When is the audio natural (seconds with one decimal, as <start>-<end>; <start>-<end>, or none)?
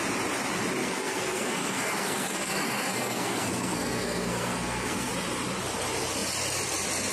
0.0-0.8; 5.1-7.1